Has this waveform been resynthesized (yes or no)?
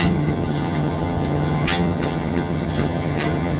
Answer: yes